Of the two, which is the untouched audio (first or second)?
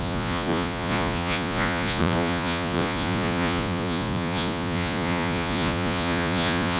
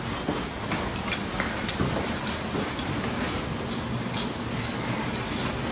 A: second